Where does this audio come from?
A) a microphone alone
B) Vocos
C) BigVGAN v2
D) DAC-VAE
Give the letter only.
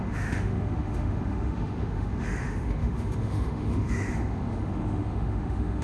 D